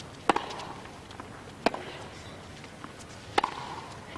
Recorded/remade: recorded